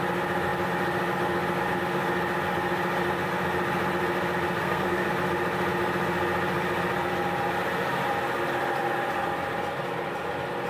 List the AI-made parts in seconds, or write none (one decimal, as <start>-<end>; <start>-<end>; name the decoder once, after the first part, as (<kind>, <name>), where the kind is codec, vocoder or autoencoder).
4.6-5.1 (codec, SNAC)